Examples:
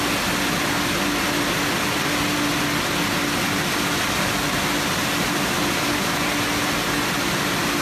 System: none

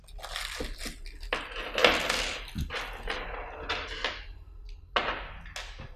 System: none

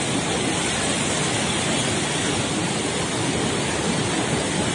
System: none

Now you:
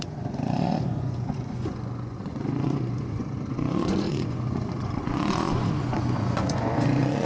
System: vocoder, Vocos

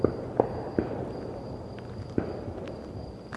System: none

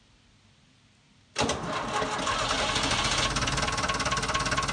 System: none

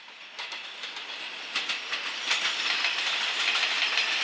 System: none